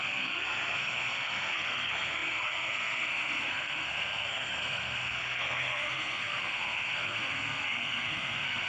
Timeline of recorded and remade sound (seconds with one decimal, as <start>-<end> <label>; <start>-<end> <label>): 0.0-8.7 remade